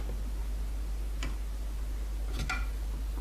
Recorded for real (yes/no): yes